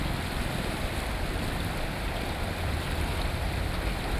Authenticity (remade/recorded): remade